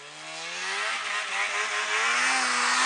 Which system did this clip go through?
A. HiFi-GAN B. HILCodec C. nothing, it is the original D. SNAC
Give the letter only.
C